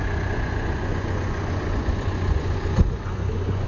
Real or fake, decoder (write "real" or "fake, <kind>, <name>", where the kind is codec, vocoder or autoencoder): fake, vocoder, Vocos